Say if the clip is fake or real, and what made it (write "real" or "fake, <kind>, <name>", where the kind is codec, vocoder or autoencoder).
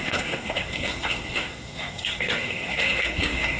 fake, codec, SNAC